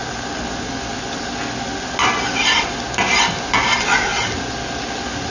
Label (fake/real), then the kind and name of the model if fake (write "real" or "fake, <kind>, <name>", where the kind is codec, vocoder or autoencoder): real